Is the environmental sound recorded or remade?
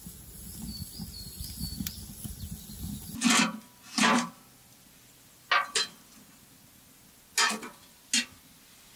recorded